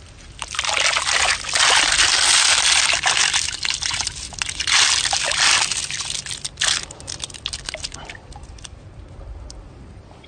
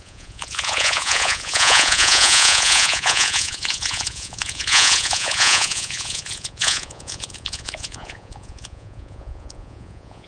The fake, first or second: second